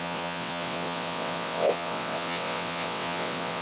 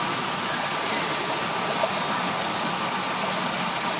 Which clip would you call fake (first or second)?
first